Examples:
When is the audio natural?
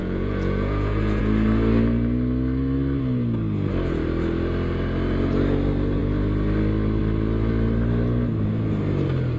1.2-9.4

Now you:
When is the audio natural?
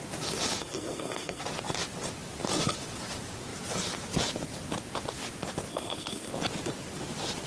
0.0-0.6; 1.4-5.7; 6.3-7.5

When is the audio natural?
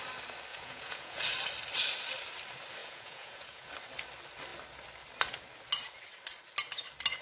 0.0-0.5; 1.2-2.8; 3.7-7.2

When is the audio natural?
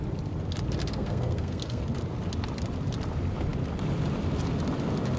0.0-0.9; 1.8-5.2